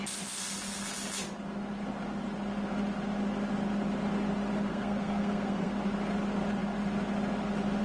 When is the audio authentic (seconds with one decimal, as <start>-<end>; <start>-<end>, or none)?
0.0-4.7; 5.7-7.8